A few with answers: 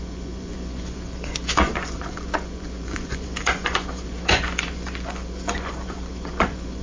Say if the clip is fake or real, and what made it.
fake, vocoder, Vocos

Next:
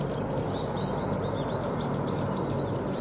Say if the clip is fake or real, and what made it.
real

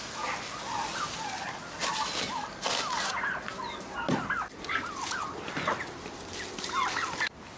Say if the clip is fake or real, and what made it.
real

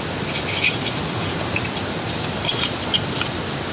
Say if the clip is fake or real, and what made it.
real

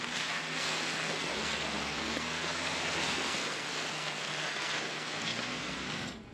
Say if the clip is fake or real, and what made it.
fake, codec, SNAC